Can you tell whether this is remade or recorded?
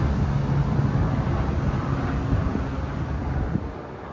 recorded